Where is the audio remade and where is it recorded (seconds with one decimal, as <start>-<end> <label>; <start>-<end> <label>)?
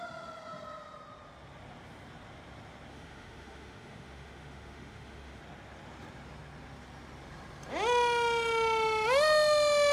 0.0-2.9 recorded; 2.9-5.4 remade; 5.4-9.9 recorded